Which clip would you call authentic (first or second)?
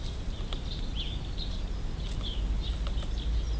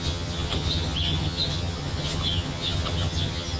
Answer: first